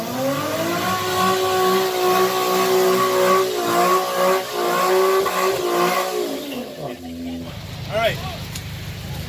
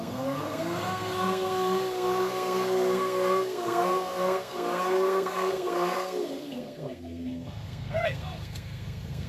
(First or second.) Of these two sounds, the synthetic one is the second